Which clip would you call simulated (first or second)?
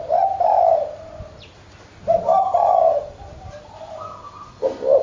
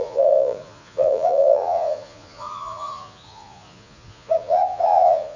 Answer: second